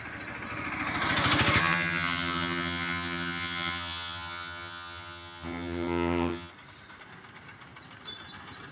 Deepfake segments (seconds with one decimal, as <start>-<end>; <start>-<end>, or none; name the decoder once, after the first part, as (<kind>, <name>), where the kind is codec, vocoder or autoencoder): 1.6-6.5 (vocoder, HiFi-GAN)